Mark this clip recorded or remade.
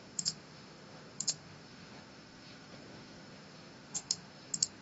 remade